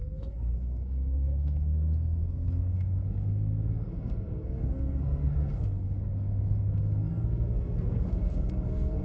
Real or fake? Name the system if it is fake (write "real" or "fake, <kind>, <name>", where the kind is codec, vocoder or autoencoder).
fake, codec, SNAC